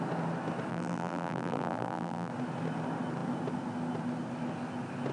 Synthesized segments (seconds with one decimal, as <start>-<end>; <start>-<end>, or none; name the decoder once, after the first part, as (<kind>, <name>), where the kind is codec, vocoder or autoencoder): 0.7-2.3 (vocoder, BigVGAN v2)